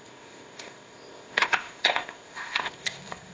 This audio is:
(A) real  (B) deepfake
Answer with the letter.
B